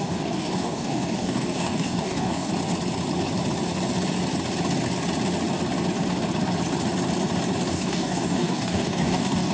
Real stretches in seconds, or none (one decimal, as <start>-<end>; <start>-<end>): 2.5-7.7